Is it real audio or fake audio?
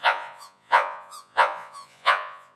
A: fake